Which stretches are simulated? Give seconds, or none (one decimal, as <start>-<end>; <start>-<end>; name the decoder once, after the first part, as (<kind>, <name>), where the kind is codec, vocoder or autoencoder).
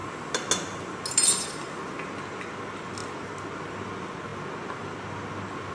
none